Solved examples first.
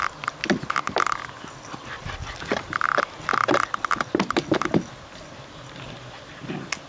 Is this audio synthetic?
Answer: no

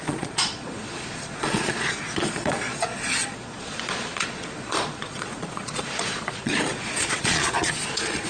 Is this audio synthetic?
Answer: yes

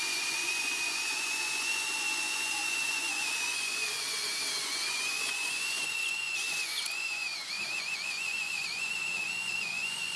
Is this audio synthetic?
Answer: yes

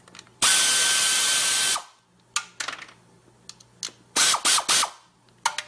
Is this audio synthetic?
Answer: no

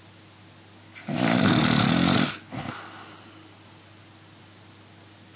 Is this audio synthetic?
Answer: no